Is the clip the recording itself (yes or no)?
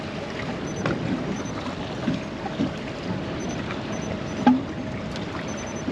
yes